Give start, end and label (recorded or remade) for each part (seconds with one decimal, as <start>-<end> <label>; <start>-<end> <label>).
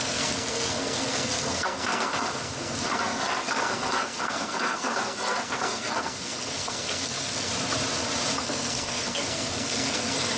0.0-7.5 remade; 7.5-8.4 recorded; 8.4-10.4 remade